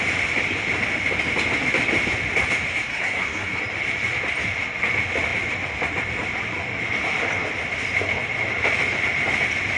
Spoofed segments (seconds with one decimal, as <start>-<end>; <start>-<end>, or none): 2.9-3.6